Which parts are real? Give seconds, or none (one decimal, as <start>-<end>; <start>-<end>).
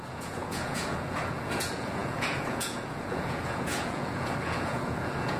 none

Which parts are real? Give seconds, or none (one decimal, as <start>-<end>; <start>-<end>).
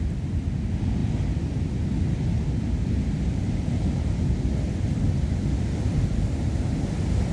0.0-7.3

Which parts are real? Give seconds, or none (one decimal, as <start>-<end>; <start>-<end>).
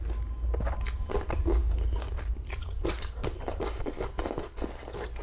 0.0-5.2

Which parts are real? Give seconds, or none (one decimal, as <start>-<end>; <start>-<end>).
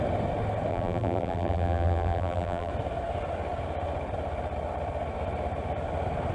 0.0-0.7; 2.7-6.3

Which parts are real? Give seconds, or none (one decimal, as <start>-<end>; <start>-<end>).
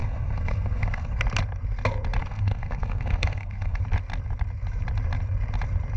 1.2-2.2; 3.8-6.0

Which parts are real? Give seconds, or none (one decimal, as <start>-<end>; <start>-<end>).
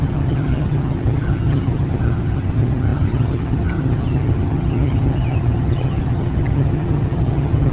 none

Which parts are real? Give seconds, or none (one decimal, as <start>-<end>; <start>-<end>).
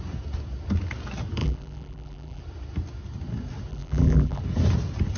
0.0-1.4; 2.4-3.7; 4.4-5.2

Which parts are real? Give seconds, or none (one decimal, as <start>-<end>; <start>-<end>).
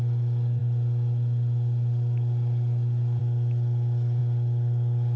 0.0-5.2